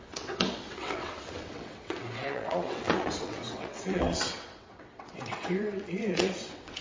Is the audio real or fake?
fake